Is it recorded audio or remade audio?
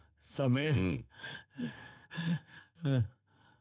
remade